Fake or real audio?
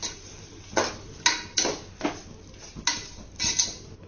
real